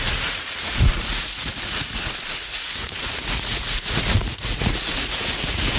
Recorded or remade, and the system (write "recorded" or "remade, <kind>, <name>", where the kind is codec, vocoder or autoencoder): remade, vocoder, Vocos